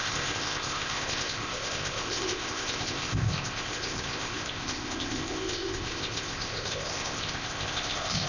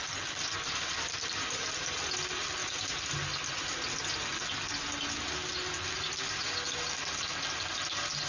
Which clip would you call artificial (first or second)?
first